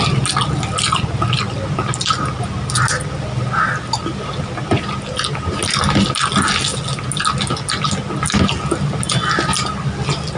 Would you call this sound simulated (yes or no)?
no